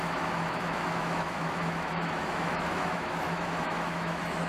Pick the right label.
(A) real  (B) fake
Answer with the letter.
B